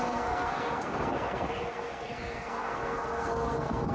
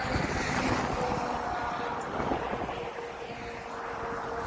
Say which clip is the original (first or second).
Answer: second